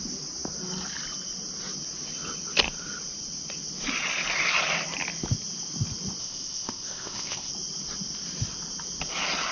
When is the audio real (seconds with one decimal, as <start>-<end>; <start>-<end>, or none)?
0.0-6.2; 7.5-9.5